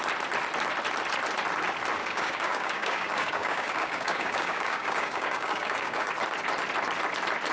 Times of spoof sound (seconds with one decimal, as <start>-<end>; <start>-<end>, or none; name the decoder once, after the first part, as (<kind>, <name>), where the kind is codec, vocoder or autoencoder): 2.0-6.1 (codec, DAC)